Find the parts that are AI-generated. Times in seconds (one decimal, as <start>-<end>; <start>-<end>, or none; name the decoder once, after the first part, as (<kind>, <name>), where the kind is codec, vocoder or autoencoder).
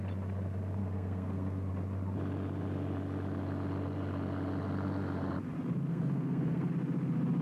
0.8-1.7 (codec, SNAC); 5.9-6.7